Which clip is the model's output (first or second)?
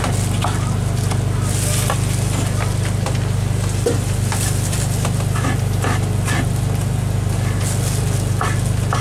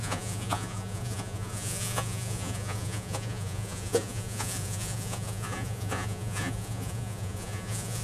second